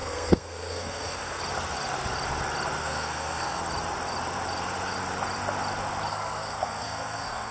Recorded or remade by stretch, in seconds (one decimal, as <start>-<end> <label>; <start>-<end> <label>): 0.0-1.4 remade; 1.4-2.8 recorded; 2.8-3.6 remade; 3.6-6.1 recorded; 6.1-7.5 remade